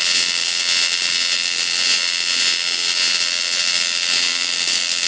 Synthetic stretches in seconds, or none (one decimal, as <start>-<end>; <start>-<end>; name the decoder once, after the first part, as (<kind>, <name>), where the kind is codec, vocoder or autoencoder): 0.0-5.1 (vocoder, BigVGAN v2)